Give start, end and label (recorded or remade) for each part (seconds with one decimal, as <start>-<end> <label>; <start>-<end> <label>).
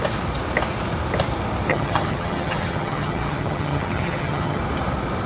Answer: 0.0-1.7 recorded; 1.7-4.6 remade; 4.6-5.3 recorded